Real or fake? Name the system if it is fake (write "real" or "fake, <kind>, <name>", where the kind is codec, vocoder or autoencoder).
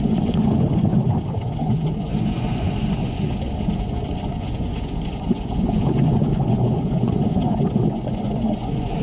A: fake, vocoder, Vocos